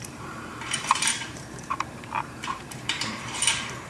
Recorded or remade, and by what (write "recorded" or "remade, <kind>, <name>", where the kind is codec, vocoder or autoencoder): remade, vocoder, BigVGAN v2